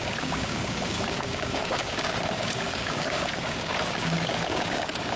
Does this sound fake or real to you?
fake